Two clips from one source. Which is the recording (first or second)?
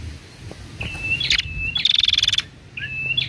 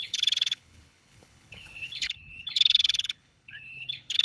first